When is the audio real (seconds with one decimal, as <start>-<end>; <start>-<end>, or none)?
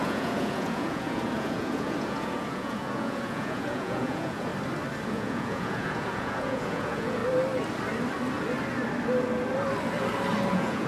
4.5-5.1; 7.2-10.5